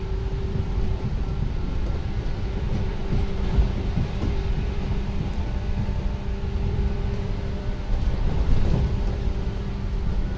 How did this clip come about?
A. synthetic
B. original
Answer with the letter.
A